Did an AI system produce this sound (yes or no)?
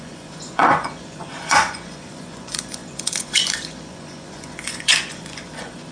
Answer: yes